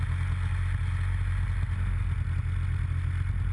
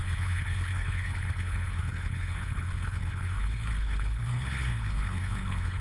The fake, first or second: second